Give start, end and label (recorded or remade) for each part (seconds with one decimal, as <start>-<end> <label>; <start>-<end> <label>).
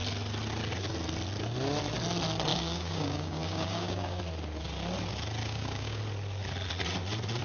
0.0-2.5 recorded; 2.5-4.2 remade; 4.2-5.4 recorded; 5.4-6.0 remade; 6.0-7.4 recorded